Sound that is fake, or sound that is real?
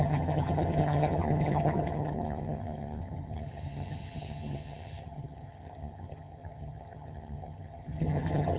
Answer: fake